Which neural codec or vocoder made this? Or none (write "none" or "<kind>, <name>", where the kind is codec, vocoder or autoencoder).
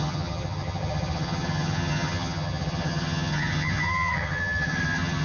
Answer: vocoder, HiFi-GAN